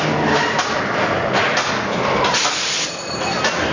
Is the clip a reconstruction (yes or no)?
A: no